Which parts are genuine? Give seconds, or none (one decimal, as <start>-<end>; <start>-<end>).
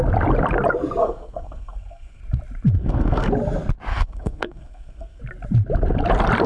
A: 0.0-1.0; 2.2-2.8; 3.3-3.9; 5.2-6.5